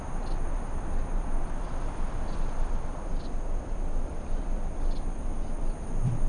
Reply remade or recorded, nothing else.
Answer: recorded